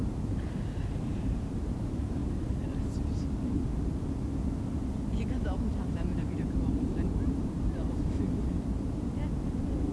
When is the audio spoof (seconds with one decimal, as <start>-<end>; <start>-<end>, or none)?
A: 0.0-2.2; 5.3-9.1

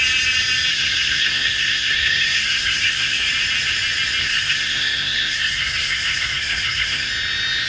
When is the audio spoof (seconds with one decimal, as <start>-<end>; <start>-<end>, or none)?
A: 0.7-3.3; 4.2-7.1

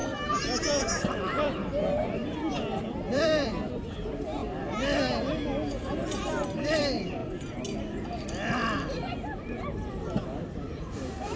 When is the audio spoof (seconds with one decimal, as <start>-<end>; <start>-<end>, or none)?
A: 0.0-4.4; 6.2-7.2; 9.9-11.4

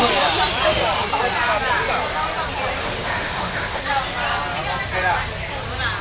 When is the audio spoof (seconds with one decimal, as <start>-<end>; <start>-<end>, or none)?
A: 2.8-3.8

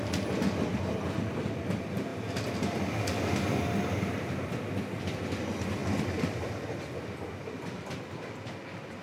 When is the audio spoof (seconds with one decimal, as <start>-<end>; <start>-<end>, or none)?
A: 0.0-2.1; 5.0-9.0

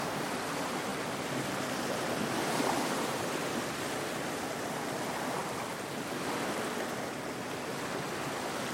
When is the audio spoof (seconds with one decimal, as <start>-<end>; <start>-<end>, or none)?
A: none